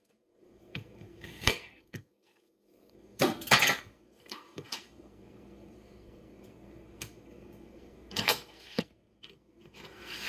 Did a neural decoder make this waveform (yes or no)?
yes